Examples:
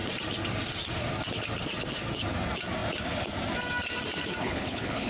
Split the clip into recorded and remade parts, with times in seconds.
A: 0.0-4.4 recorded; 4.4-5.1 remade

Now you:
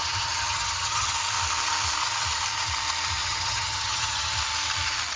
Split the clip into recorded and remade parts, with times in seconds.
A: 0.0-1.1 remade; 1.1-3.2 recorded; 3.2-4.3 remade; 4.3-5.2 recorded

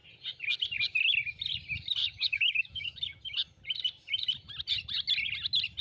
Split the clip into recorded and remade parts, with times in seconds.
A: 0.0-2.0 recorded; 2.0-3.2 remade; 3.2-5.8 recorded

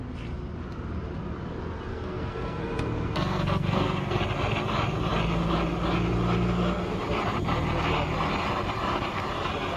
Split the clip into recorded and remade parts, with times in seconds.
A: 0.0-1.9 recorded; 1.9-4.2 remade; 4.2-9.8 recorded

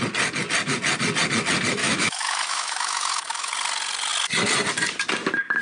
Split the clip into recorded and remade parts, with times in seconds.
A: 0.0-1.8 recorded; 1.8-3.5 remade; 3.5-5.6 recorded

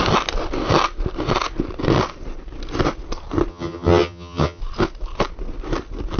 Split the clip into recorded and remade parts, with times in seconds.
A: 0.0-3.5 recorded; 3.5-4.6 remade; 4.6-6.2 recorded

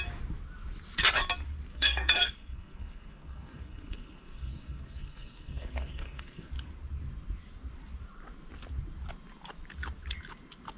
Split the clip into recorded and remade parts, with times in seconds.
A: 0.0-1.7 recorded; 1.7-6.5 remade; 6.5-10.8 recorded